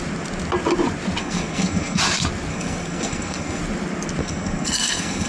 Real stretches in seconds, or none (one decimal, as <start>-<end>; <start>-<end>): 0.0-1.2; 2.0-2.5; 3.6-4.2